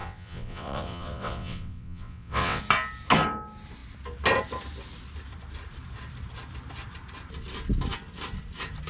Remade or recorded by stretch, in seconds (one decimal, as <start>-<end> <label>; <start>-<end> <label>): 0.0-2.6 remade; 2.6-8.9 recorded